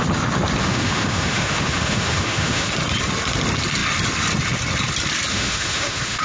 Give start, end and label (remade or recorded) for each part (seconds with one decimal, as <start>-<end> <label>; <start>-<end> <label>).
0.0-0.6 recorded; 0.6-2.7 remade; 2.7-5.3 recorded; 5.3-6.2 remade